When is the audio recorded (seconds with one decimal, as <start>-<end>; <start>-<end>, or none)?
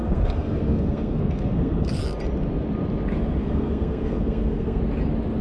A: 2.0-3.4; 4.8-5.4